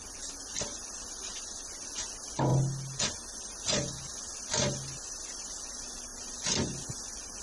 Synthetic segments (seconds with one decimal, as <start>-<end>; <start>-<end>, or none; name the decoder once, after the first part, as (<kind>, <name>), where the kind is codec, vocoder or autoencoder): none